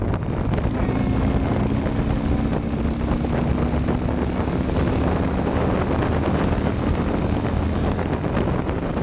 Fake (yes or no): no